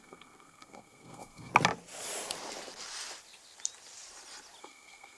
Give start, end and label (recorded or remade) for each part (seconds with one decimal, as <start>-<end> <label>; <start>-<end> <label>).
0.0-1.5 remade; 1.5-4.6 recorded; 4.6-5.2 remade